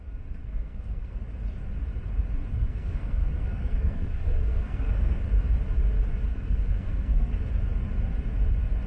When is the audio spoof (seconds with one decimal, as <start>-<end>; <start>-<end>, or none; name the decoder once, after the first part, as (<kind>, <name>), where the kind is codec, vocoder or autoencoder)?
0.4-1.2 (codec, SNAC); 2.5-5.2; 6.3-7.3